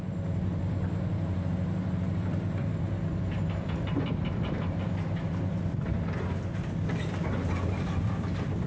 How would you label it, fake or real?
real